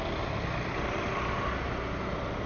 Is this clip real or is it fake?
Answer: real